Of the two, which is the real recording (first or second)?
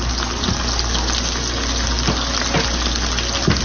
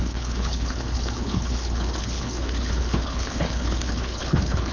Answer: first